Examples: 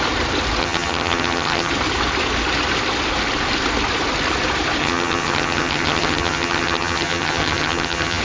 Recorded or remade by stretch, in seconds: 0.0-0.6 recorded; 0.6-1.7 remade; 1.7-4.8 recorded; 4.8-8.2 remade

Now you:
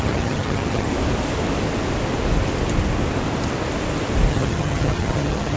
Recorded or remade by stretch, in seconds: 0.0-0.9 remade; 0.9-4.3 recorded; 4.3-5.6 remade